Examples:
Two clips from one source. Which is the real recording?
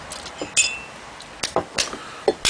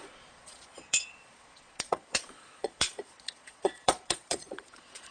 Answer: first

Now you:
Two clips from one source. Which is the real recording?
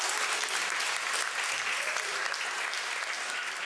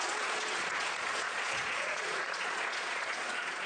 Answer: first